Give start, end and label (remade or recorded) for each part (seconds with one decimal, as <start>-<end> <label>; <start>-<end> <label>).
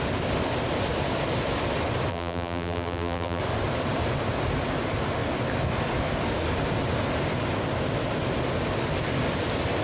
0.0-2.1 recorded; 2.1-3.4 remade; 3.4-9.8 recorded